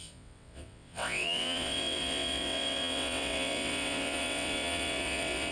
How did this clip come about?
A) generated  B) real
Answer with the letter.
A